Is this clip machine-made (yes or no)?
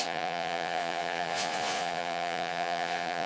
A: yes